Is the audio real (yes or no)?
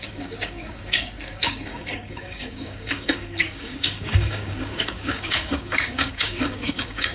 no